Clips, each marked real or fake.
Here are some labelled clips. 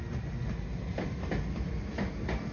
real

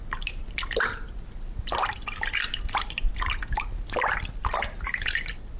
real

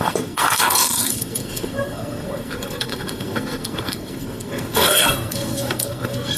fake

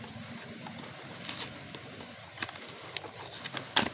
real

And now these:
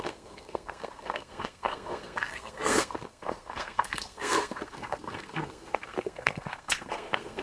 fake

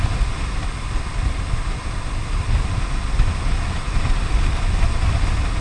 real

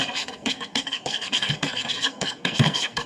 fake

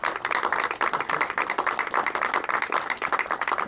real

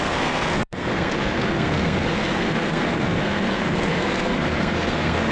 fake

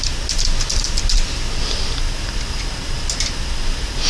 real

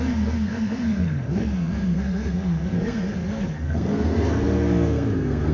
fake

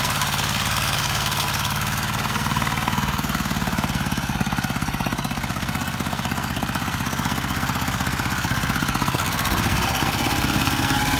fake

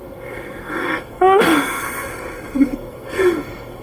fake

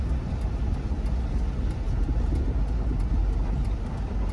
real